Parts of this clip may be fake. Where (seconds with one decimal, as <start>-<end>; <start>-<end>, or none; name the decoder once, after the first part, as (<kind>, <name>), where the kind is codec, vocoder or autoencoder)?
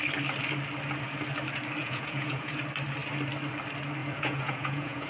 1.8-2.6 (vocoder, Vocos); 4.0-5.1